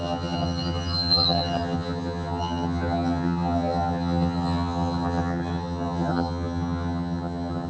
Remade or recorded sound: remade